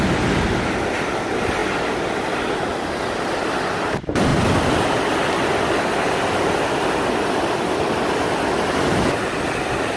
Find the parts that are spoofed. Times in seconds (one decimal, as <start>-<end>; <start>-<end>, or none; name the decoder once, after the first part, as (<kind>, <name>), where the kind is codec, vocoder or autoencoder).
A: none